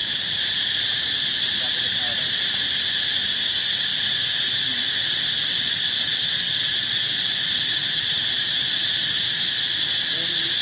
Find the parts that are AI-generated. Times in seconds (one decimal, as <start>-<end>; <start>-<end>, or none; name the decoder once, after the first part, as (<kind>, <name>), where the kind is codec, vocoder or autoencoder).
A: 0.0-2.2 (vocoder, BigVGAN v2); 7.8-10.6